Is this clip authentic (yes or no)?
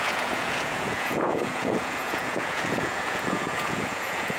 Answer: no